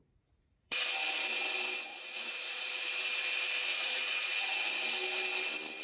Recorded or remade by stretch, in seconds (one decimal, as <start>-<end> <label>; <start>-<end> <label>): 0.0-0.8 remade; 0.8-1.9 recorded; 1.9-2.9 remade; 2.9-3.7 recorded; 3.7-4.7 remade; 4.7-5.8 recorded